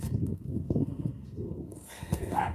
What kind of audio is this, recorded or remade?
remade